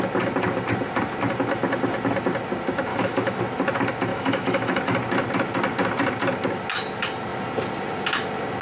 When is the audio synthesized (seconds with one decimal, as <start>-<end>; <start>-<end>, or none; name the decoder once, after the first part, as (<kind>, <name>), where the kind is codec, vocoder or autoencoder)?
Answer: 2.9-3.4 (autoencoder, DAC-VAE); 4.1-4.8